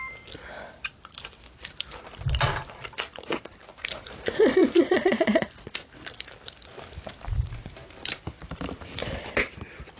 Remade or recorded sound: remade